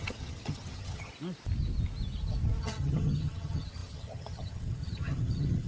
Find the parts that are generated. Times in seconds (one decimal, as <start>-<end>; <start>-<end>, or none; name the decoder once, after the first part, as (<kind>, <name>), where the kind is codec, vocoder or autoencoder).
0.0-1.1 (vocoder, HiFi-GAN); 2.6-5.7